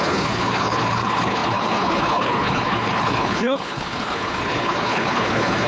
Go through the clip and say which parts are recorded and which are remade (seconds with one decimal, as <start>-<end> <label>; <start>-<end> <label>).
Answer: 0.0-5.7 remade

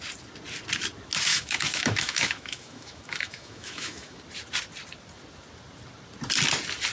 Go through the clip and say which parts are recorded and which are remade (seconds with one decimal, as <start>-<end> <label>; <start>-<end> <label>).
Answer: 0.0-1.3 recorded; 1.3-4.2 remade; 4.2-6.9 recorded

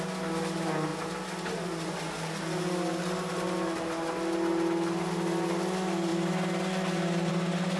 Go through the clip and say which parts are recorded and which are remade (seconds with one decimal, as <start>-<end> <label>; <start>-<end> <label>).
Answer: 0.0-7.8 recorded

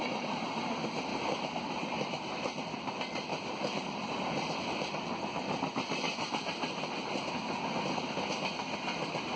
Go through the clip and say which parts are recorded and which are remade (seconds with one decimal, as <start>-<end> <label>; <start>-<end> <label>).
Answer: 0.0-1.1 recorded; 1.1-1.8 remade; 1.8-3.3 recorded; 3.3-7.3 remade; 7.3-9.4 recorded

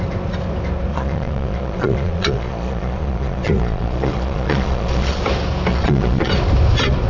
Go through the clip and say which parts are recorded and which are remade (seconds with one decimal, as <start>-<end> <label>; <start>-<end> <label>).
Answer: 0.0-0.9 recorded; 0.9-5.2 remade; 5.2-5.7 recorded; 5.7-6.3 remade; 6.3-7.1 recorded